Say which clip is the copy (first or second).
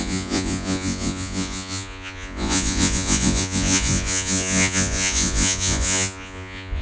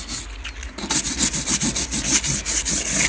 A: first